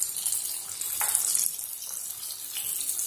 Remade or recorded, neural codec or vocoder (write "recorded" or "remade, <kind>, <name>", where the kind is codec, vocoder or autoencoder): recorded